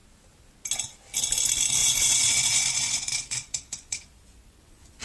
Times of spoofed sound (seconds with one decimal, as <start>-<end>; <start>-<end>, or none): 1.8-5.0